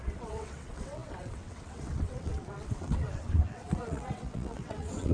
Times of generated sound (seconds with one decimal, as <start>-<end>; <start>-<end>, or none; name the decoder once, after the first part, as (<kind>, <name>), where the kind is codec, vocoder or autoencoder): 0.0-5.1 (vocoder, WaveNeXt)